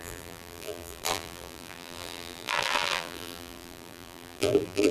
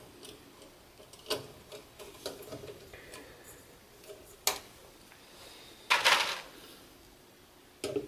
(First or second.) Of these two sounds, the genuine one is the second